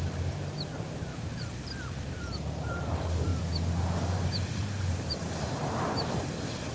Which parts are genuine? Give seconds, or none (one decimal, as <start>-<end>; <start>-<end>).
1.1-2.2; 3.3-4.8